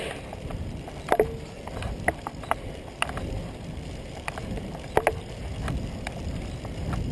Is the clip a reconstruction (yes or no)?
no